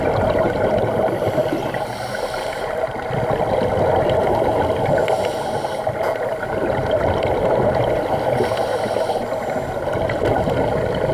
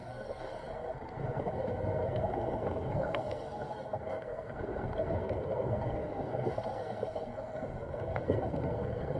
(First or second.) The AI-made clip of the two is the second